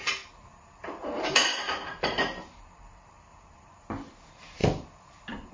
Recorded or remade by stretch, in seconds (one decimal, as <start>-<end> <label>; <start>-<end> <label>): 0.0-0.5 recorded; 0.5-3.8 remade; 3.8-4.6 recorded; 4.6-5.1 remade; 5.1-5.5 recorded